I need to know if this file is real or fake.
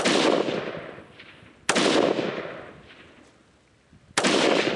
real